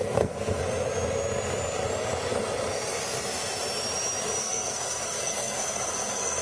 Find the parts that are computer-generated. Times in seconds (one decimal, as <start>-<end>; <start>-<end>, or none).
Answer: 0.0-0.6; 4.4-6.4